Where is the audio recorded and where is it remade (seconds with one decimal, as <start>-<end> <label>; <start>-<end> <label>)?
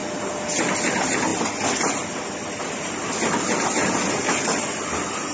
0.0-5.3 recorded